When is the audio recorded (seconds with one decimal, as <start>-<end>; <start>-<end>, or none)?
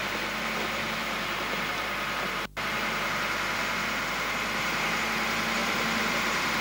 0.0-5.6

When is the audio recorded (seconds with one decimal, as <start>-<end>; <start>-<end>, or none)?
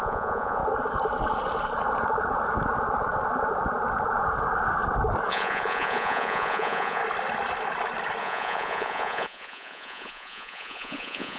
0.6-5.3; 7.0-8.2